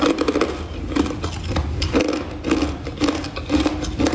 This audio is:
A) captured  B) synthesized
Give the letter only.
A